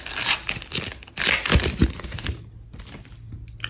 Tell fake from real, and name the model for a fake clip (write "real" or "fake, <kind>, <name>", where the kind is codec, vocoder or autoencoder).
real